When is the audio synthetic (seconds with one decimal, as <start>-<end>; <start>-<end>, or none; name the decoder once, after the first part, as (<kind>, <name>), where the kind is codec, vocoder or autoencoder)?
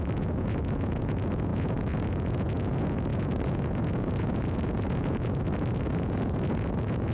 0.0-7.1 (vocoder, Vocos)